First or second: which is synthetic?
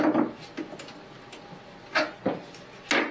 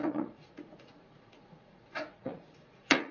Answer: second